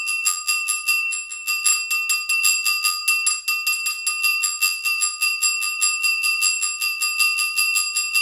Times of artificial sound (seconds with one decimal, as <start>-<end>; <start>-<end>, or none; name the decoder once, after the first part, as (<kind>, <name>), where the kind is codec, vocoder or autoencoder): 0.0-1.7 (vocoder, BigVGAN v2); 2.4-3.0; 4.2-8.2